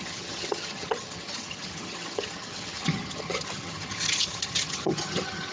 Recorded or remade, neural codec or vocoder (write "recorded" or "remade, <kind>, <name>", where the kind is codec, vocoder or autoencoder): remade, vocoder, HiFi-GAN